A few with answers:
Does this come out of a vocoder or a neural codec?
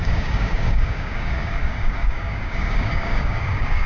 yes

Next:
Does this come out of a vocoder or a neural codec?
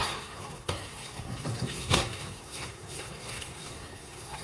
yes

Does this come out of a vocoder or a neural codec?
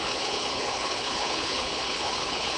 yes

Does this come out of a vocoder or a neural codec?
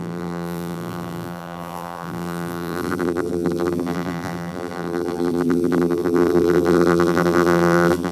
yes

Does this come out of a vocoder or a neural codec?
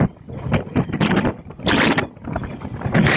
no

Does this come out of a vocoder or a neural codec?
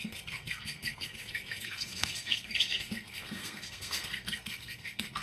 yes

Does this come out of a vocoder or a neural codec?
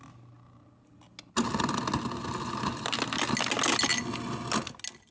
no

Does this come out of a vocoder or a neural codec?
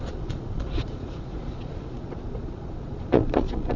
yes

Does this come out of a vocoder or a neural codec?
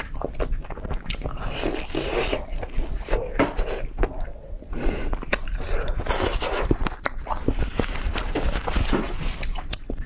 no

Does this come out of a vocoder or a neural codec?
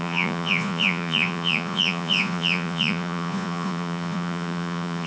yes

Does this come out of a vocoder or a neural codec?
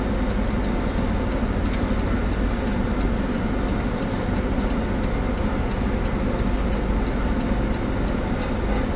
no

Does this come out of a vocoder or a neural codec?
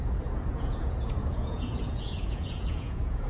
yes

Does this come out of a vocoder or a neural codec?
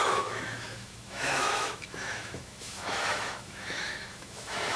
yes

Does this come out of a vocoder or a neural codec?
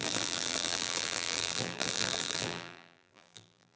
yes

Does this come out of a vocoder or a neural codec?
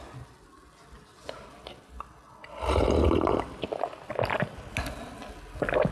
no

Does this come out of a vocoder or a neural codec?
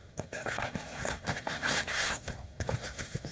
yes